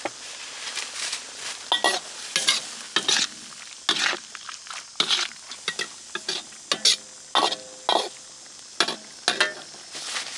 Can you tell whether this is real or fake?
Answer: real